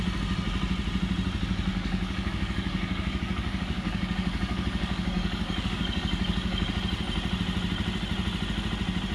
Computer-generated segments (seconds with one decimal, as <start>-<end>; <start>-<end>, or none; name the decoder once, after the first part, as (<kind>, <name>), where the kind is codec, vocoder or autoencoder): 1.7-6.7 (codec, DAC)